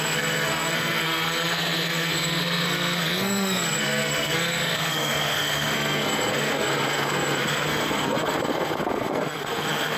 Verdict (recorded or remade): remade